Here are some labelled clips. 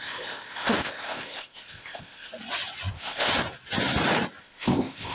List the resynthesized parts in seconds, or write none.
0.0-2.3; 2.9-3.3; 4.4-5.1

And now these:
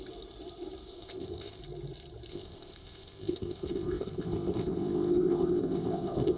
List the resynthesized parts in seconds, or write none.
0.9-1.6; 2.3-6.4